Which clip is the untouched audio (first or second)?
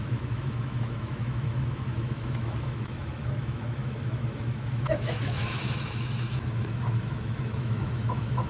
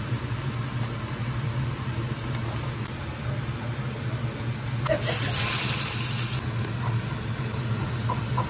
second